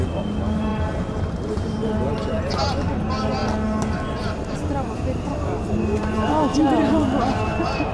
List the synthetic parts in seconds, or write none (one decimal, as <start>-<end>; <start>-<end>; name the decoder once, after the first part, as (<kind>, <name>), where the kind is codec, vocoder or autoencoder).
0.7-2.4 (vocoder, BigVGAN v2); 6.0-7.1